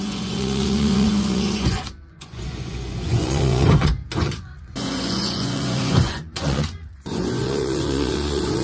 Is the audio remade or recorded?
remade